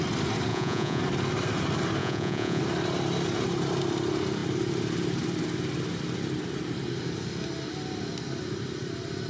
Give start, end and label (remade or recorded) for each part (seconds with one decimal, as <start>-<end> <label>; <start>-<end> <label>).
0.0-0.5 recorded; 0.5-1.0 remade; 1.0-2.0 recorded; 2.0-2.6 remade; 2.6-9.3 recorded